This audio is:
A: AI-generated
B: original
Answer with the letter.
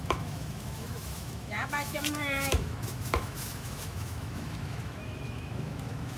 A